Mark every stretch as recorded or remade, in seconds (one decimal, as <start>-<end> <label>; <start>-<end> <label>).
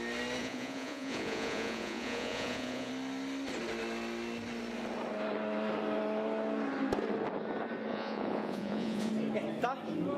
0.0-0.4 recorded; 0.4-2.9 remade; 2.9-7.9 recorded; 7.9-9.1 remade; 9.1-10.2 recorded